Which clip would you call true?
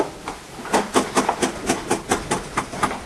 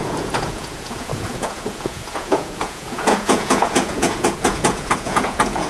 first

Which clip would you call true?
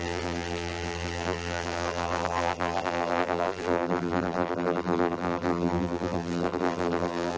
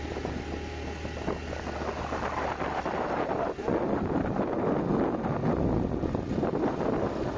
second